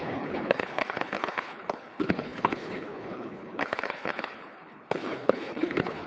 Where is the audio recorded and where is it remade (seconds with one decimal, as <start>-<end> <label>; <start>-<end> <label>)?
0.0-6.1 remade

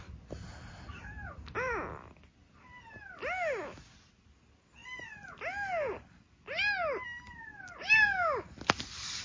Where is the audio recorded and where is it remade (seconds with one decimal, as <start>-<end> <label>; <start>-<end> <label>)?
0.0-9.2 recorded